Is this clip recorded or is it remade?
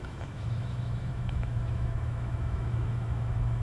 remade